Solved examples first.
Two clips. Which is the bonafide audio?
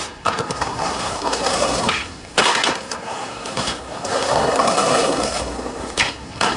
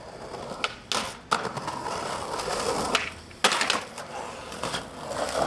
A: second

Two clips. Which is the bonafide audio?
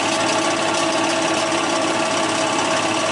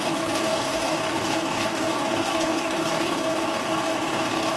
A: first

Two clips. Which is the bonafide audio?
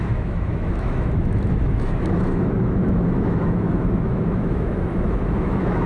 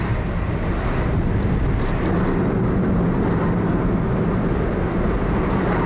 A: second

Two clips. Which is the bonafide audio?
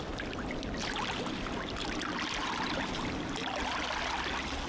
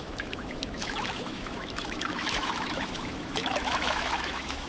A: first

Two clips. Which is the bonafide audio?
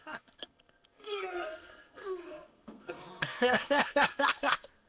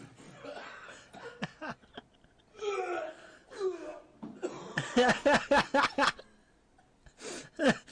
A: second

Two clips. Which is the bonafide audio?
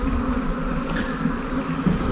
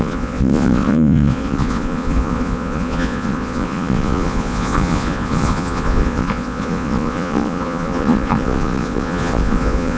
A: first